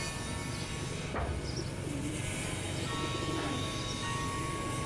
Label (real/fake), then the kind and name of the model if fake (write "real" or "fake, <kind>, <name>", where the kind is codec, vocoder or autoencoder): real